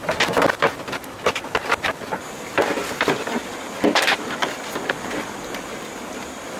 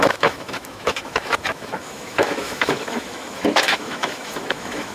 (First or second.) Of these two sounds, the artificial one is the second